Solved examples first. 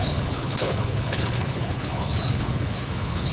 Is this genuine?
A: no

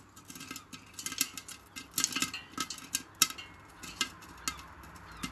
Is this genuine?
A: yes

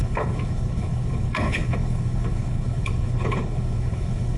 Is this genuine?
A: no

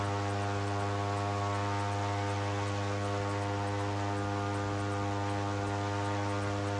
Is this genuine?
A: yes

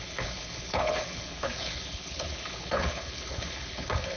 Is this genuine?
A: no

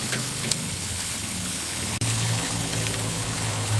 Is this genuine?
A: no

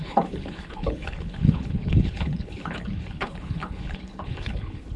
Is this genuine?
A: no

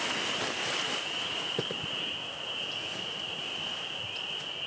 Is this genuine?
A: yes